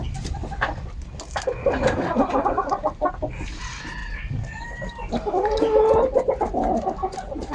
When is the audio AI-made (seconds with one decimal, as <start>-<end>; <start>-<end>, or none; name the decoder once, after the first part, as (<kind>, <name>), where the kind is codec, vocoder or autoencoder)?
none

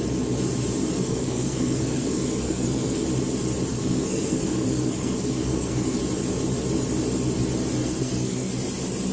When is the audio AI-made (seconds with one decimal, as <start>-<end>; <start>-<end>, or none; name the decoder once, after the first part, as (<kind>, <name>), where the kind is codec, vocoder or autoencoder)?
0.9-3.0 (codec, SNAC); 3.7-6.0; 7.8-8.5

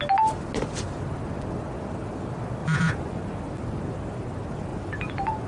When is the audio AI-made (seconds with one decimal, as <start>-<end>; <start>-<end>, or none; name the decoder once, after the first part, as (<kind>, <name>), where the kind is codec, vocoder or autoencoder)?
2.6-3.2 (vocoder, Vocos); 4.7-5.5

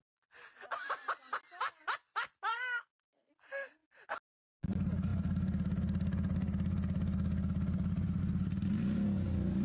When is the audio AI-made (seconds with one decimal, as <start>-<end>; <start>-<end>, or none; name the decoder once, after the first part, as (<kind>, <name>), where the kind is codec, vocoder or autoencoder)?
2.5-3.3 (codec, SNAC)